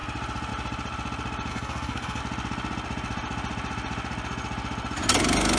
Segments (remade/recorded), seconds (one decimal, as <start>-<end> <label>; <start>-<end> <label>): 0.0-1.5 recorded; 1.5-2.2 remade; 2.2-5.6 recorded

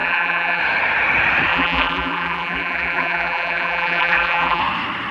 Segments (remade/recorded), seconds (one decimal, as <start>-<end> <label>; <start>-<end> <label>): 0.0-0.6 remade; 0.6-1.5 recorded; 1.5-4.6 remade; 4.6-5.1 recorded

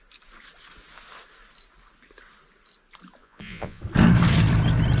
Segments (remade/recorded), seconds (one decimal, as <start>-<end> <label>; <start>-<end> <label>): 0.0-3.2 recorded; 3.2-3.8 remade; 3.8-5.0 recorded

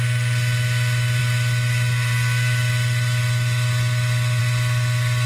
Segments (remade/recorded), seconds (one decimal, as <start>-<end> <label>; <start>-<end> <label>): 0.0-5.3 recorded